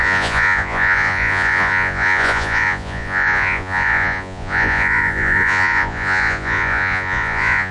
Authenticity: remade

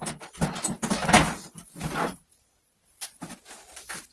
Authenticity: recorded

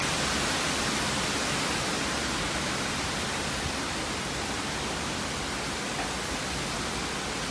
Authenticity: recorded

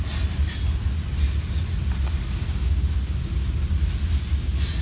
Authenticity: recorded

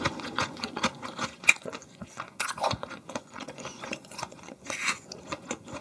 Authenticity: remade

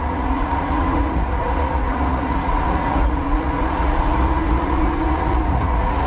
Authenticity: remade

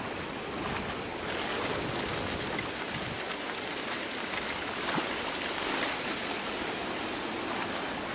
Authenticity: recorded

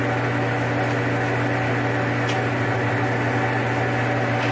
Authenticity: recorded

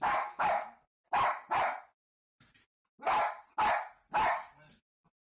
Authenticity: recorded